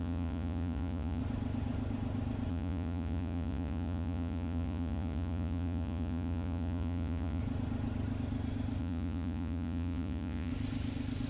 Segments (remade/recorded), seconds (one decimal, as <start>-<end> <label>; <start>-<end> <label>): 0.0-1.2 remade; 1.2-2.5 recorded; 2.5-7.4 remade; 7.4-8.8 recorded; 8.8-10.5 remade; 10.5-11.3 recorded